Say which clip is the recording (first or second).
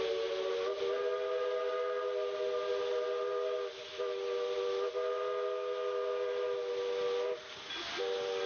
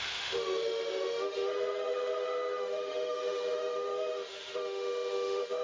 first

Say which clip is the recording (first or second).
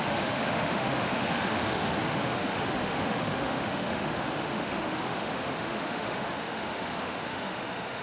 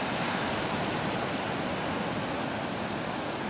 second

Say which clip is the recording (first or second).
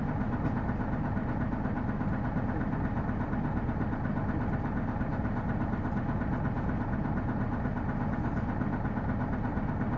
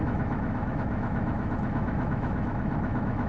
first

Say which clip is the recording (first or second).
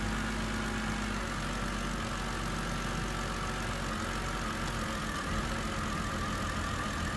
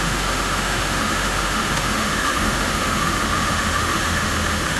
first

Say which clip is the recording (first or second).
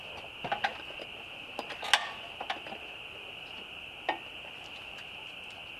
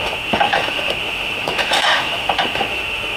first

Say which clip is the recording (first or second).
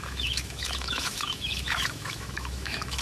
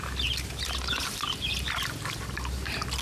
second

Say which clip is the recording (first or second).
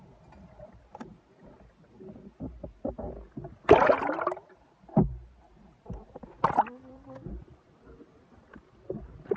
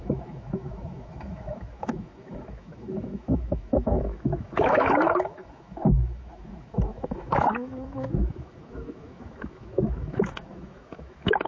first